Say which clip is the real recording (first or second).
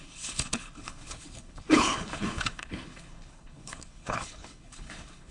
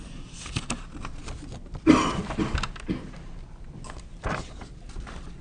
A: second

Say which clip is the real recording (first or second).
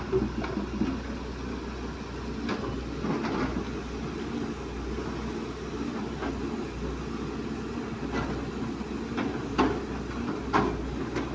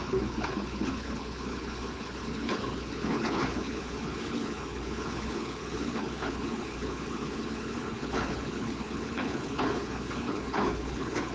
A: first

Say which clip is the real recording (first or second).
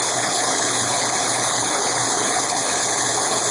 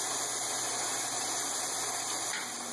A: second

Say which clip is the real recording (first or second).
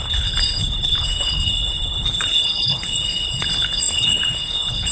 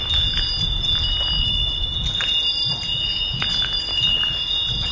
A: second